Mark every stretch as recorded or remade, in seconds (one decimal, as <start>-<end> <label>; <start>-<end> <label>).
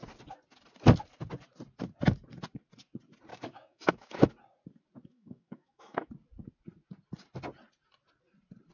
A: 0.0-3.3 recorded; 3.3-4.3 remade; 4.3-5.1 recorded; 5.1-6.1 remade; 6.1-8.7 recorded